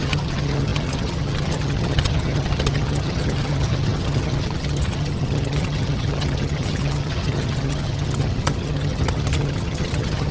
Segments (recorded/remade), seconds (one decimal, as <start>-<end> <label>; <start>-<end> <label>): 0.0-10.3 remade

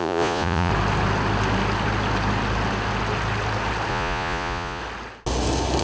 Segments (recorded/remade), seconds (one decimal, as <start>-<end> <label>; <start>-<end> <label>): 0.0-0.7 remade; 0.7-3.9 recorded; 3.9-4.8 remade; 4.8-5.8 recorded

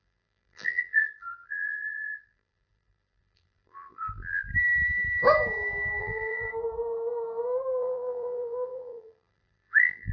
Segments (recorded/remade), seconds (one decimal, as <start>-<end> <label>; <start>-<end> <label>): 0.0-4.5 remade; 4.5-6.0 recorded; 6.0-6.5 remade; 6.5-7.8 recorded; 7.8-10.1 remade

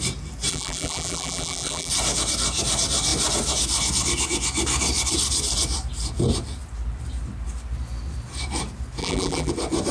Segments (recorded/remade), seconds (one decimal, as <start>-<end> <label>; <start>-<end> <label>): 0.0-0.5 recorded; 0.5-1.9 remade; 1.9-9.0 recorded; 9.0-9.5 remade; 9.5-9.9 recorded